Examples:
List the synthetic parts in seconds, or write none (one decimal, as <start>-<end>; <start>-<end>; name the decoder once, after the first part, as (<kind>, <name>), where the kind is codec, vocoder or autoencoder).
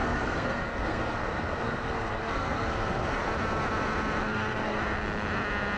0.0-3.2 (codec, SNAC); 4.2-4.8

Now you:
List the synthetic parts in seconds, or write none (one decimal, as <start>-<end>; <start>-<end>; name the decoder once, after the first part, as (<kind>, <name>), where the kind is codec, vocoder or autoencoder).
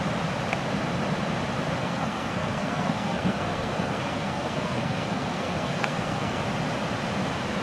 1.8-6.4 (codec, SNAC)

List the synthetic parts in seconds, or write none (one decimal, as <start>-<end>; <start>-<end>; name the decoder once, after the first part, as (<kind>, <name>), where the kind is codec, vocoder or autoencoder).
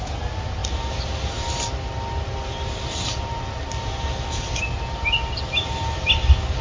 none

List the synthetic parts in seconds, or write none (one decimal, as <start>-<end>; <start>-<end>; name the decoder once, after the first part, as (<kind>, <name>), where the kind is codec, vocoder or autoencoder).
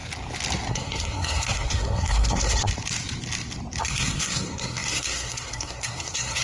0.7-2.7 (codec, SNAC); 3.8-6.4